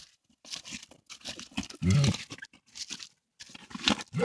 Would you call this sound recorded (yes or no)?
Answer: yes